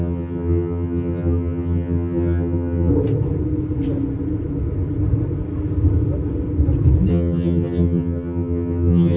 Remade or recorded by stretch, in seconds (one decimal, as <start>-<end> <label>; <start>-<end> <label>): 0.0-2.9 remade; 2.9-7.1 recorded; 7.1-9.2 remade